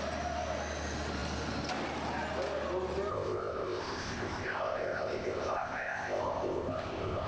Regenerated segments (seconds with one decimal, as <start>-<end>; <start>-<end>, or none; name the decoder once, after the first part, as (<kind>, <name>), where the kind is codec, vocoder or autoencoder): 3.1-7.3 (codec, ZipCodec)